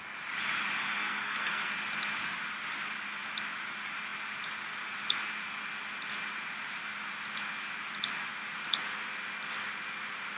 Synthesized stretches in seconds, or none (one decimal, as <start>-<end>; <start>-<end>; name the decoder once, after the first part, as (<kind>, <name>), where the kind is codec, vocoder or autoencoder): 0.8-1.7 (codec, SNAC)